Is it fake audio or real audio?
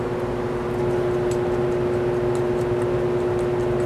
real